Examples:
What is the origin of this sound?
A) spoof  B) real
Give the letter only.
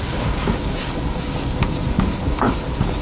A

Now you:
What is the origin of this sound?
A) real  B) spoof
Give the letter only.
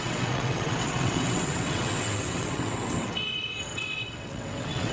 B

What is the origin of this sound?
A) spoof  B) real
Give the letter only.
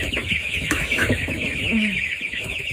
A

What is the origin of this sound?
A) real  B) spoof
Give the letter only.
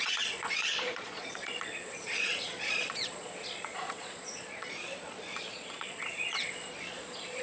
B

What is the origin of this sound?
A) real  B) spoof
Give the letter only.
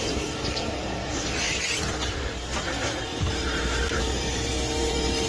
B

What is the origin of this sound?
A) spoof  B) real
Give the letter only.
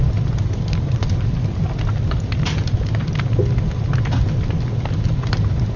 B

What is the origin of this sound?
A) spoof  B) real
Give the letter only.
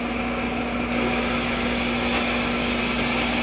B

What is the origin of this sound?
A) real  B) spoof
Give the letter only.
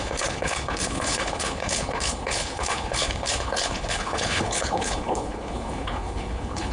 B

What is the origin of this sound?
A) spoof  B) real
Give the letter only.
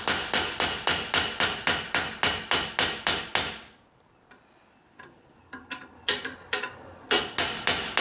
B